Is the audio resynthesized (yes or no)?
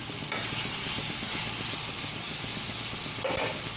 no